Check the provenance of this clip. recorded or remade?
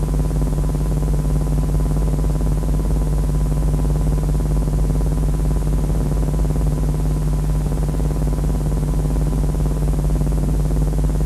recorded